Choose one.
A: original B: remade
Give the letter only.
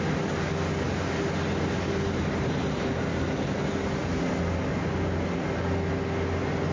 A